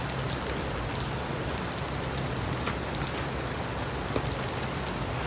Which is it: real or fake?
real